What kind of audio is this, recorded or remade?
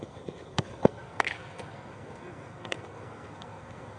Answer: remade